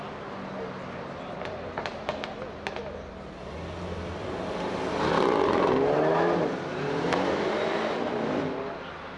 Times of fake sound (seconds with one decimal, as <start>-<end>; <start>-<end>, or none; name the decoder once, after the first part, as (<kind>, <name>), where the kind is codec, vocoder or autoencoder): none